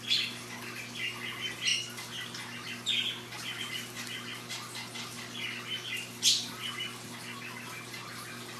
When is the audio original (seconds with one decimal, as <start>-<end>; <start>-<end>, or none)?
0.0-8.6